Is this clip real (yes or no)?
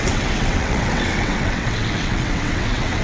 no